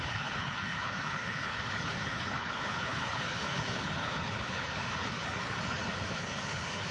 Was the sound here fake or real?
fake